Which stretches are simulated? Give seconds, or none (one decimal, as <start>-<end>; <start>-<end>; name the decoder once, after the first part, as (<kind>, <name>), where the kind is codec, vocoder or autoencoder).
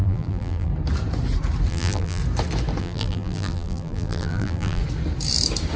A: 0.0-0.7 (vocoder, BigVGAN v2); 1.7-2.2; 2.8-4.8